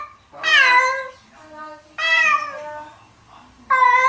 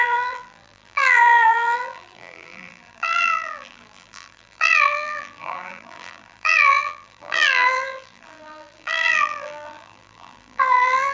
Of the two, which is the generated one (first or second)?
second